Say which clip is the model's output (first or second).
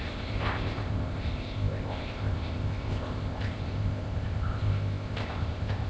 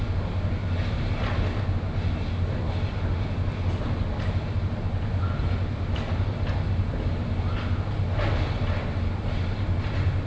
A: first